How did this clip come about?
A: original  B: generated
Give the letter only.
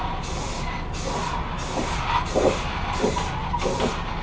A